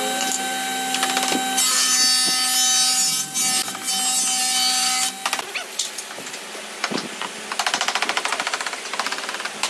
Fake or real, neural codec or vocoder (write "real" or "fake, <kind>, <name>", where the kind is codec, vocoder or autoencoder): real